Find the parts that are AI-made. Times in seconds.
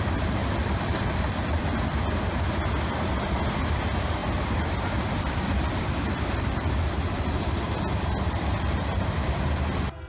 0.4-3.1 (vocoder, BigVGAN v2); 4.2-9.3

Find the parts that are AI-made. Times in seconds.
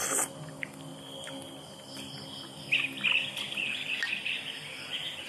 none